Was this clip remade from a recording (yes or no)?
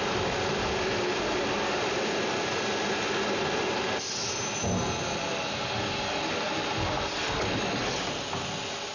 no